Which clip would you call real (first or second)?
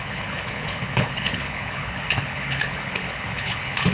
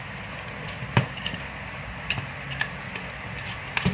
second